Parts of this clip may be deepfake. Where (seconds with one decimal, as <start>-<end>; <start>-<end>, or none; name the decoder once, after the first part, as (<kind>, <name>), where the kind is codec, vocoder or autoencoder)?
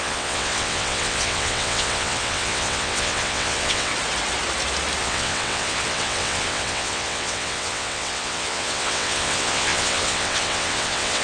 0.0-3.9 (vocoder, WaveNeXt); 5.0-11.2